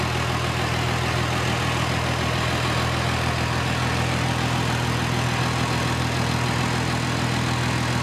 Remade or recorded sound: recorded